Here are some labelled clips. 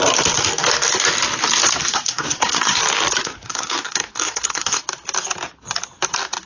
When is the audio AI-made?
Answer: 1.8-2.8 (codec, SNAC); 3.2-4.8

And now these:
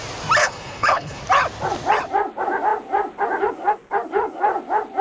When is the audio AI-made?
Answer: 0.4-1.2 (codec, HILCodec)

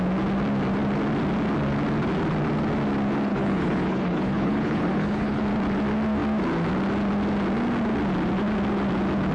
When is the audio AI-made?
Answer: 3.3-5.4 (codec, HILCodec)

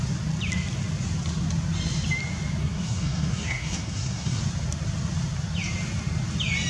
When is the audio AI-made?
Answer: 2.6-4.4 (codec, SNAC)

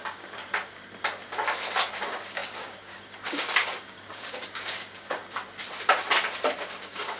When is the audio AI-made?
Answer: 0.0-0.4 (codec, DAC); 1.9-5.2; 6.8-7.2

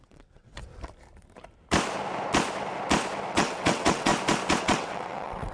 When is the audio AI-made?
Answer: 0.0-0.7 (vocoder, WaveNeXt); 3.3-4.1; 4.6-5.5

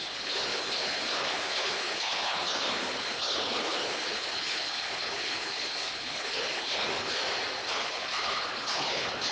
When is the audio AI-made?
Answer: 0.0-7.2 (codec, HILCodec); 7.7-9.3